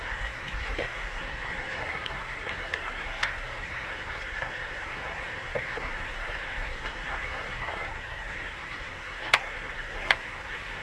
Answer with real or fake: fake